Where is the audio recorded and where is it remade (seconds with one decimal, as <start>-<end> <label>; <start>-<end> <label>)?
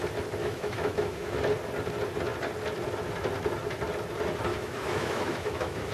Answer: 0.0-0.4 recorded; 0.4-1.4 remade; 1.4-4.5 recorded; 4.5-5.9 remade